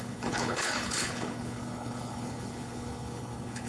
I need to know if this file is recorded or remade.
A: remade